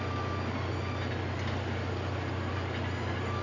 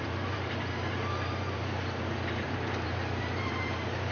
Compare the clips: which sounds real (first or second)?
first